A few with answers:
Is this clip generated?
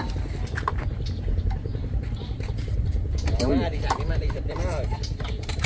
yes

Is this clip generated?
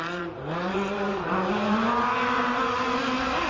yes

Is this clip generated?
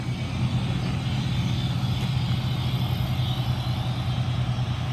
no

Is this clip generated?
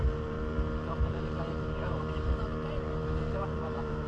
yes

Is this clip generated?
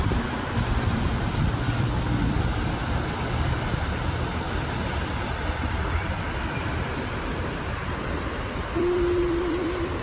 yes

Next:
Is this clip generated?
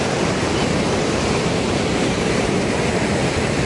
yes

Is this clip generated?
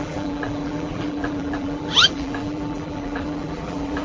yes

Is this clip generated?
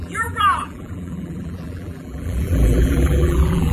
yes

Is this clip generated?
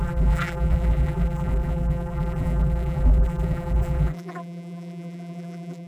yes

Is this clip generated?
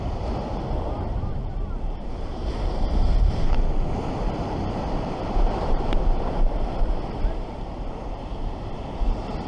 yes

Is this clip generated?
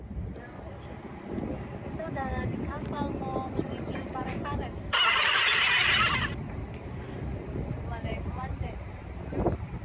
yes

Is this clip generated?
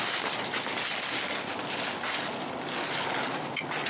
no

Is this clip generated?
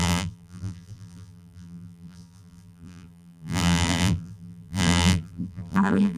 yes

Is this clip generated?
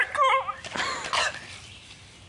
no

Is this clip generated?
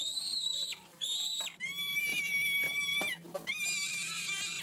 yes